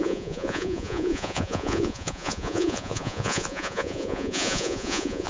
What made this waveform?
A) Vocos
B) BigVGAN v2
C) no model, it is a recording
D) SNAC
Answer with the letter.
A